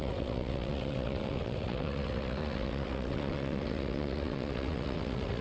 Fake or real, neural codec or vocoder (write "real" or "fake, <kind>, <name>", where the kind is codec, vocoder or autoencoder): fake, vocoder, WaveNeXt